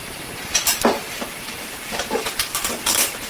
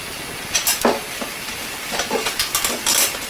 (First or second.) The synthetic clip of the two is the first